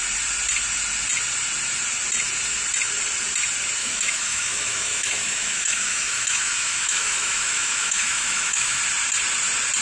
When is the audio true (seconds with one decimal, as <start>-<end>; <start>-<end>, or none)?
0.0-3.8; 8.8-9.8